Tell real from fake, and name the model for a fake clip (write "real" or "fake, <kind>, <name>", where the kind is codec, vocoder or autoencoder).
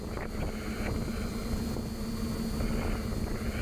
real